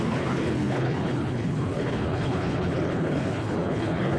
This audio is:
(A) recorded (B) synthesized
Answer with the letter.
B